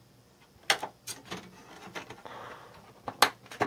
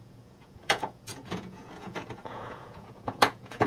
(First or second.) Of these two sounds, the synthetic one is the second